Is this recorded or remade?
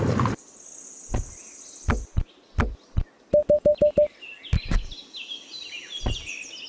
recorded